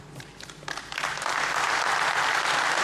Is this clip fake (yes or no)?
no